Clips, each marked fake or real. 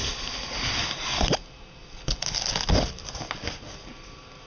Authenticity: real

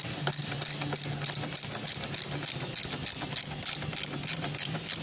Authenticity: real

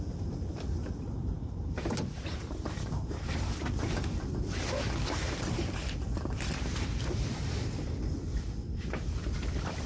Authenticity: fake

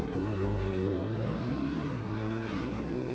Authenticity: fake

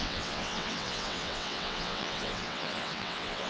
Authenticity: fake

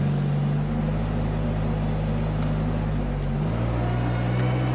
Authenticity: real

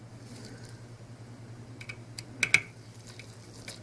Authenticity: real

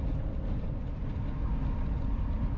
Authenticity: real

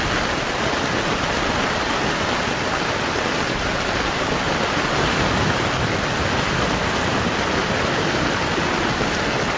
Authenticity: real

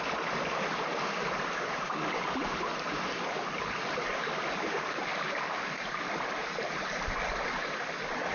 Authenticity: real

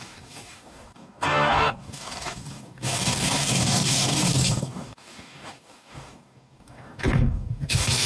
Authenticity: fake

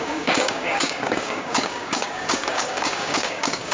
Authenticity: fake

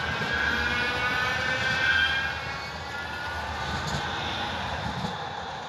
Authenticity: real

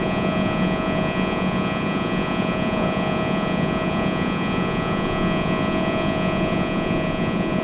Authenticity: fake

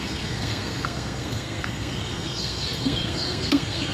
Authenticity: fake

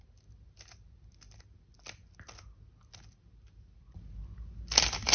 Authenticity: real